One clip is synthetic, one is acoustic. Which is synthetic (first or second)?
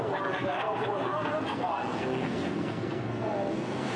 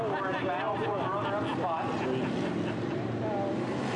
first